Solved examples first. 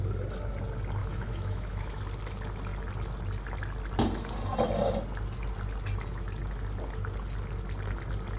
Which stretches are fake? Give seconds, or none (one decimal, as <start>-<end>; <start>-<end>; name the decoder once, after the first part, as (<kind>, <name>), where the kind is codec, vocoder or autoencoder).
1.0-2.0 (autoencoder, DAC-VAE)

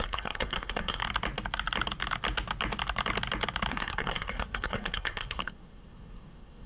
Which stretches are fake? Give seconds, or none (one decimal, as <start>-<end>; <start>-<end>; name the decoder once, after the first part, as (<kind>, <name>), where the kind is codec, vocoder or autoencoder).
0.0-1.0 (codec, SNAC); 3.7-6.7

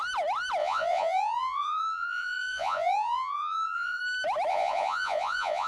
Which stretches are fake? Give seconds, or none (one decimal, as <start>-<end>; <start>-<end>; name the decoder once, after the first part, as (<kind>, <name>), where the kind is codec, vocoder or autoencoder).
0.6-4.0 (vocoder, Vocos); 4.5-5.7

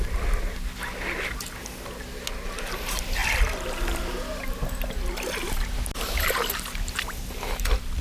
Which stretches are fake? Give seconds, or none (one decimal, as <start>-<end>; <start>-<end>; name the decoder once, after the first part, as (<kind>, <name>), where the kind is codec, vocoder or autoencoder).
3.2-4.0 (vocoder, BigVGAN v2)

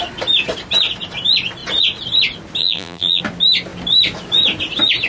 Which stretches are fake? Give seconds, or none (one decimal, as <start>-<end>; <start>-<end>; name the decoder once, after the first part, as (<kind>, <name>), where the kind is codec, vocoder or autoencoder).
2.6-3.2 (vocoder, BigVGAN v2)

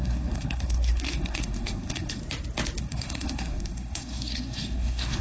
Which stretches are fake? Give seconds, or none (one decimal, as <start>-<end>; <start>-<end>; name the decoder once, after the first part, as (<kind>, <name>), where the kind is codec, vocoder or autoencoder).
0.0-2.2 (codec, SNAC); 2.8-5.2

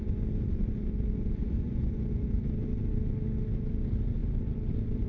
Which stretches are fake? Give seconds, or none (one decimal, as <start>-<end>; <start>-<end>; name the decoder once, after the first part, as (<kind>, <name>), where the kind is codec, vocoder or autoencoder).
1.4-2.4 (vocoder, Vocos)

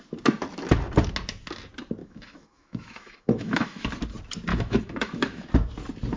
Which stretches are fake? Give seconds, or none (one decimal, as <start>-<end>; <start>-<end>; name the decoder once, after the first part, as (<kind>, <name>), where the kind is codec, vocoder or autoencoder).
2.0-3.9 (autoencoder, DAC-VAE); 4.5-5.5